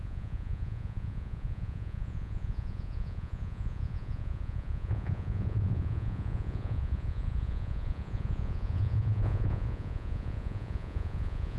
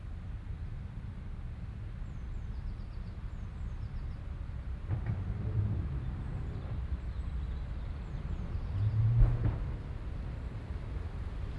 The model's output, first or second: first